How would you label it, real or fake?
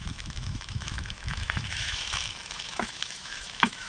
fake